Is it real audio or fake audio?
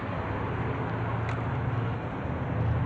real